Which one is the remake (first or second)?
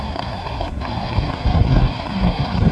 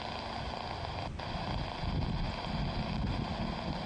first